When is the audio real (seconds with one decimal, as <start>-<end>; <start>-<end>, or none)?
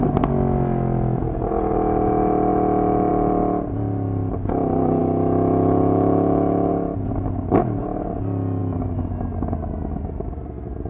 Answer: 0.0-5.0; 6.7-10.9